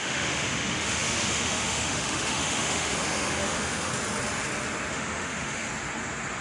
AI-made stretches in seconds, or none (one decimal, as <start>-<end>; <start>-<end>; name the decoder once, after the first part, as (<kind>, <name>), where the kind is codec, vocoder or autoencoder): 0.0-3.9 (autoencoder, DAC-VAE); 4.9-5.7